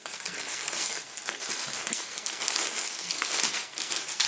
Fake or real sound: fake